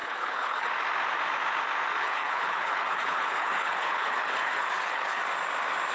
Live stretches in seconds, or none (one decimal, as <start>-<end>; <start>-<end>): 0.7-2.0; 5.2-5.9